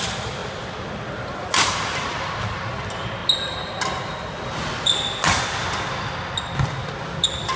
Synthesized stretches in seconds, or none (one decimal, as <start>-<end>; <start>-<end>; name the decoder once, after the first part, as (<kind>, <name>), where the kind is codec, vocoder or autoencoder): none